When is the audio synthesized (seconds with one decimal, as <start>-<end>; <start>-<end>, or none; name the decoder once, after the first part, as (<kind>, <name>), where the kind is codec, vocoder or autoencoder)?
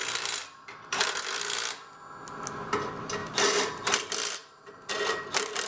0.0-1.4 (vocoder, BigVGAN v2); 3.2-4.9